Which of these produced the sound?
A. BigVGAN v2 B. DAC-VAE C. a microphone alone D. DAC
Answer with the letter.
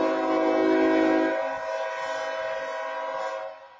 C